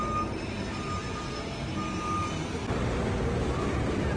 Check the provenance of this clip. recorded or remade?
recorded